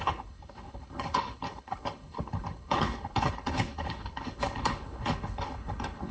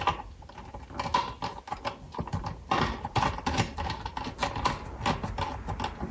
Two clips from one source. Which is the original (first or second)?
second